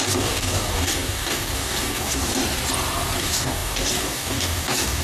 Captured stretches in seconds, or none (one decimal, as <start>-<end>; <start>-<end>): 2.3-3.2